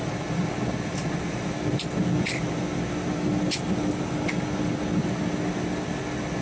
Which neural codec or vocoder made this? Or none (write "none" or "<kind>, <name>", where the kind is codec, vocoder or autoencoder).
none